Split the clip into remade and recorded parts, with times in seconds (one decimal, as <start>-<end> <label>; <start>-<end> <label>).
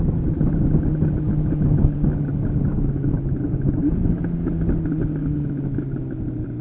0.0-6.6 recorded